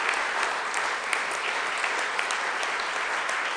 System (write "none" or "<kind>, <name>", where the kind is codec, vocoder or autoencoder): none